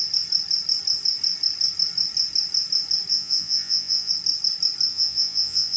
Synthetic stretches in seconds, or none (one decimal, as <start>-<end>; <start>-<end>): 3.1-4.1; 4.9-5.8